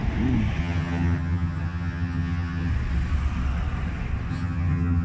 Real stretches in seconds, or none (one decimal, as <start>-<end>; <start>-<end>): 0.0-0.6; 2.7-4.3